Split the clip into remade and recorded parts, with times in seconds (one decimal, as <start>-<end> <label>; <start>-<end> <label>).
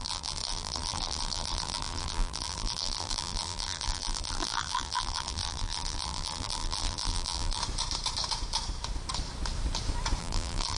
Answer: 0.0-7.6 remade; 7.6-10.2 recorded; 10.2-10.8 remade